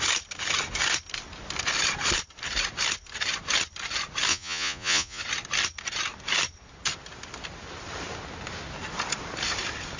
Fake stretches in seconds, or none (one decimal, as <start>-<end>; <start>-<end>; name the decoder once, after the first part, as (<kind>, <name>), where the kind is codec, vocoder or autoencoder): 4.3-5.2 (vocoder, Vocos)